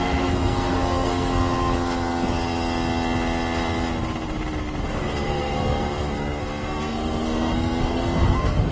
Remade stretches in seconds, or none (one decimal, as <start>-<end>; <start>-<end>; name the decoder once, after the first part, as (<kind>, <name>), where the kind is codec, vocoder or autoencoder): 0.0-1.3 (codec, SNAC); 4.8-8.7